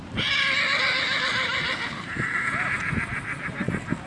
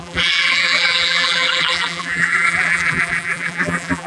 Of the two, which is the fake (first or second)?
second